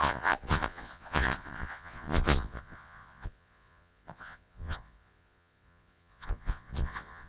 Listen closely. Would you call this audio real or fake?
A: fake